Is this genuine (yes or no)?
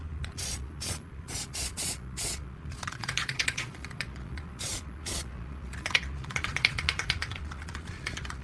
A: no